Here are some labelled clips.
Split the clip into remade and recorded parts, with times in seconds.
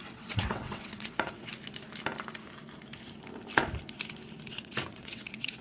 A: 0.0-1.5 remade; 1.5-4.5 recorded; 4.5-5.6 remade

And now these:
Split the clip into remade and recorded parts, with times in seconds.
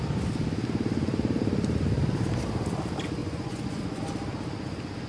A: 0.0-3.2 recorded; 3.2-4.0 remade; 4.0-5.1 recorded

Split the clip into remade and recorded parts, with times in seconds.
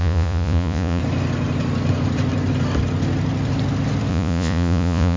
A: 0.0-1.0 remade; 1.0-4.1 recorded; 4.1-5.2 remade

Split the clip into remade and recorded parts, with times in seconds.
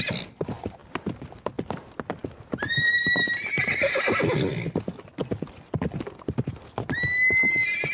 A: 0.0-7.9 recorded